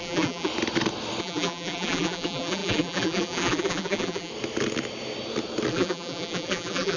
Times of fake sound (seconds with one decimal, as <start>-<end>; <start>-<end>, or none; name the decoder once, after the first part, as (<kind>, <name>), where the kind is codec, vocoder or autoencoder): 0.0-0.5 (vocoder, BigVGAN v2); 1.2-4.3; 5.7-7.0